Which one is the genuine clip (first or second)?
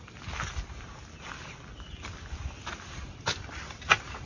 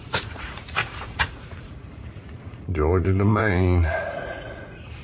first